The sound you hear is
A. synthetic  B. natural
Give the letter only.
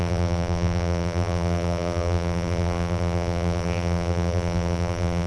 A